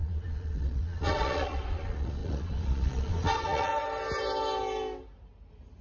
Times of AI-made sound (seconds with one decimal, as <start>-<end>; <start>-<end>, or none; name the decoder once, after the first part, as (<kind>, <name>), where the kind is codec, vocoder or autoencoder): 0.0-3.7 (vocoder, Vocos)